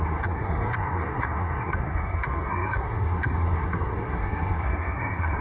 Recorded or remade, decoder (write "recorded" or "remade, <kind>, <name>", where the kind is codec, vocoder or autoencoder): remade, codec, SNAC